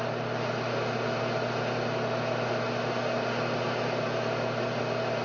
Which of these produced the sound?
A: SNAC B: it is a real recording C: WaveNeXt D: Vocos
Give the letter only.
B